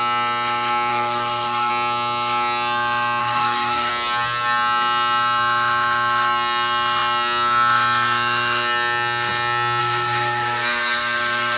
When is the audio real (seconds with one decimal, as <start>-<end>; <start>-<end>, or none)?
0.0-0.9; 1.7-3.2; 3.9-9.8

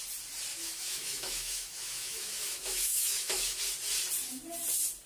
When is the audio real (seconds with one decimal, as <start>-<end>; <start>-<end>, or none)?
0.0-0.5; 3.6-5.1

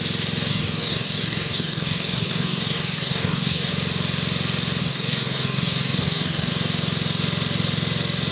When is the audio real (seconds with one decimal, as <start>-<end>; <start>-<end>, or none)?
0.0-0.5; 3.7-4.8; 6.5-8.3

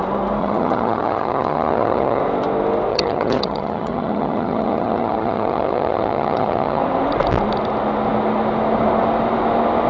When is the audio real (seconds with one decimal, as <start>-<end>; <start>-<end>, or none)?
0.0-0.4; 2.2-2.9; 6.8-9.9

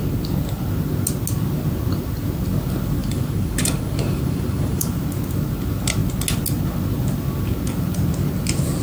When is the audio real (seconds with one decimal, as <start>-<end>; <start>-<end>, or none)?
0.0-3.0; 4.9-8.8

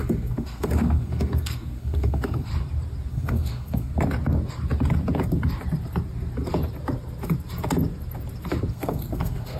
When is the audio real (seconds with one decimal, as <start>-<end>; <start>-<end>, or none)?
2.5-3.1; 3.9-8.7

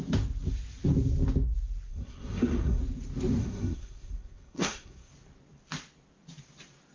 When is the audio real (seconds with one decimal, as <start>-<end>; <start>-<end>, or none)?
0.0-1.9; 2.8-3.4; 5.1-6.9